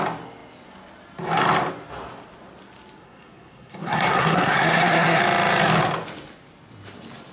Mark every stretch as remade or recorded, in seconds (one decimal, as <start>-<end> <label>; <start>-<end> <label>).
0.0-3.0 recorded; 3.0-5.2 remade; 5.2-7.3 recorded